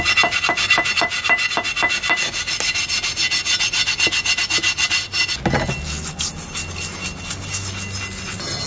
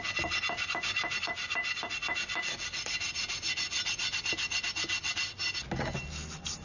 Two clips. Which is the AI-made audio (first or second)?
second